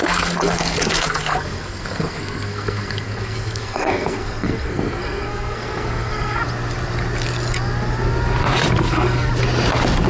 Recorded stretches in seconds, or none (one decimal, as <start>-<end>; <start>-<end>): 6.4-8.8; 9.3-10.1